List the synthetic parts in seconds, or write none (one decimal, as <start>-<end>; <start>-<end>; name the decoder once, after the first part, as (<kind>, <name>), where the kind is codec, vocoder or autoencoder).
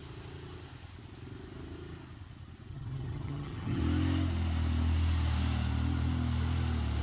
2.7-3.8 (vocoder, HiFi-GAN)